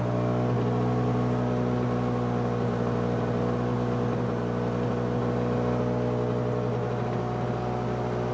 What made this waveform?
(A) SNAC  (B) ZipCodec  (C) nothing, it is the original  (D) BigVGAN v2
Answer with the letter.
C